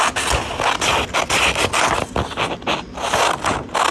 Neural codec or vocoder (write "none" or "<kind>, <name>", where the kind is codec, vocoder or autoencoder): none